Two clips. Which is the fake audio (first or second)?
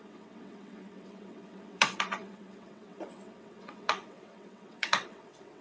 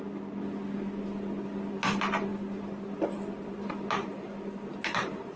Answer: first